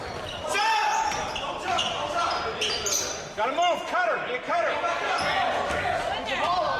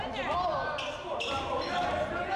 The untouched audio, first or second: second